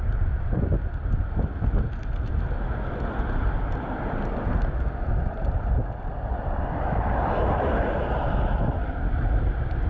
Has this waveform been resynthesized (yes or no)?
no